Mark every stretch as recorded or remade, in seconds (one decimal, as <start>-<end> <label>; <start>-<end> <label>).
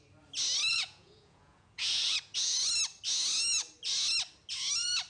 0.0-0.7 recorded; 0.7-2.6 remade; 2.6-5.1 recorded